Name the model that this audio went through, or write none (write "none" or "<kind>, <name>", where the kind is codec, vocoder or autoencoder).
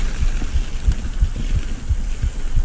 none